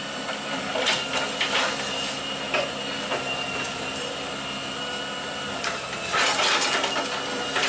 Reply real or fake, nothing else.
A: real